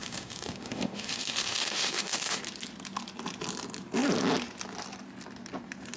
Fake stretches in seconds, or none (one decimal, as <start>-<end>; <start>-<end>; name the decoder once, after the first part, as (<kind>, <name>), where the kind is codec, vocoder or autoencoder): 0.0-2.4 (autoencoder, DAC-VAE)